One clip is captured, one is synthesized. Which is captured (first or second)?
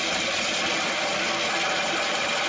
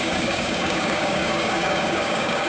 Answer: first